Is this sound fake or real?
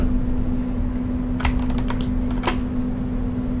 real